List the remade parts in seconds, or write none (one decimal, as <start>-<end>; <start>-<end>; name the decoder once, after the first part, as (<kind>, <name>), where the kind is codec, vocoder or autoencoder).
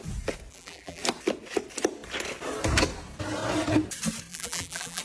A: 0.5-1.0 (vocoder, BigVGAN v2); 4.3-5.0